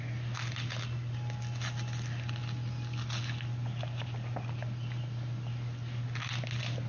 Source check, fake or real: real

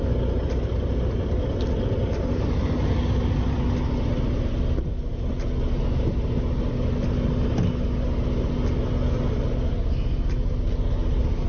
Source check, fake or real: real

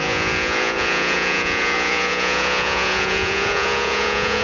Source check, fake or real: fake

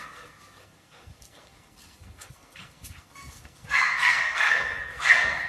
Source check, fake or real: fake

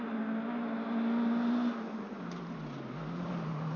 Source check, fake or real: real